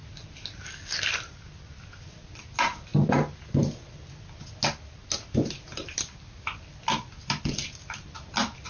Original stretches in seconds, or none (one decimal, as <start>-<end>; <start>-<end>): 0.0-8.7